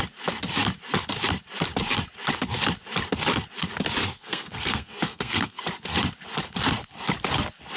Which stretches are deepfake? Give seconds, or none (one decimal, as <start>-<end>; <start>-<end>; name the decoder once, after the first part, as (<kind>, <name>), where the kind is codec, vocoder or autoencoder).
4.0-5.6 (codec, SNAC)